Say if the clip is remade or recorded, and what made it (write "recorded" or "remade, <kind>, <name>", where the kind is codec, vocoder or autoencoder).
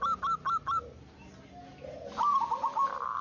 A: recorded